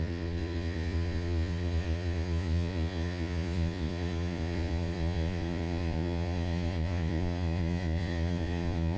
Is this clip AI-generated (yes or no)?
yes